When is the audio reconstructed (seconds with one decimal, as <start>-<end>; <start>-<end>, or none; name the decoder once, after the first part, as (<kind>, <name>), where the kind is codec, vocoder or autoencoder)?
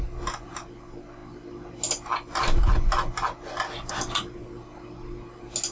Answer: none